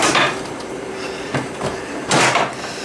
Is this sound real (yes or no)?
no